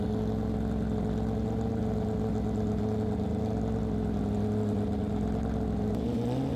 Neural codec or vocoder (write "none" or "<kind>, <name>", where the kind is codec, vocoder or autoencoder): none